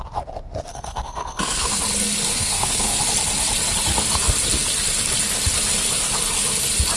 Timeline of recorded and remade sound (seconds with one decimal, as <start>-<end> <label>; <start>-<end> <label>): 0.0-0.7 recorded; 0.7-1.8 remade; 1.8-2.3 recorded; 2.3-3.0 remade; 3.0-7.0 recorded